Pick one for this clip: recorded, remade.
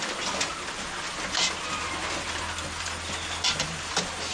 recorded